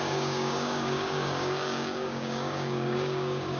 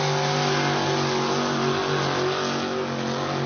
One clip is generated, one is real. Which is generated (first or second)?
first